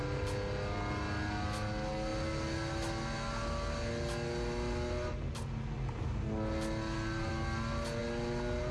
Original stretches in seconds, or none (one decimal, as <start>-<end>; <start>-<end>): 0.0-8.7